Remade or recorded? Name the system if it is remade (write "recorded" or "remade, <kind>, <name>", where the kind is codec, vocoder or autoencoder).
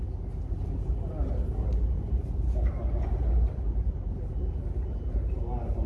recorded